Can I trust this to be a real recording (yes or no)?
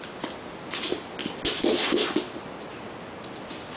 yes